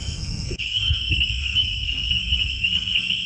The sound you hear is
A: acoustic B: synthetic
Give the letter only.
B